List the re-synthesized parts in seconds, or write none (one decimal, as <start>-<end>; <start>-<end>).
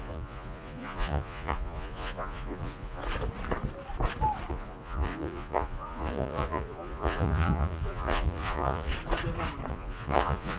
0.0-3.0; 4.5-8.9; 9.7-10.6